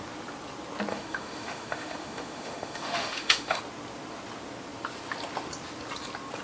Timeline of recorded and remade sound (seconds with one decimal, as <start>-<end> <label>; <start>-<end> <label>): 0.0-0.9 recorded; 0.9-3.6 remade; 3.6-6.4 recorded